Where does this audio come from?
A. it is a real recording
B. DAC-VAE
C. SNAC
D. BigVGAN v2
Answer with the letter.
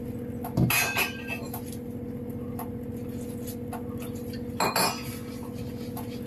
A